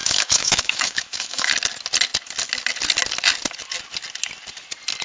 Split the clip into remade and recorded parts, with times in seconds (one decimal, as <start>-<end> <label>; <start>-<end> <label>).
0.0-1.5 remade; 1.5-5.0 recorded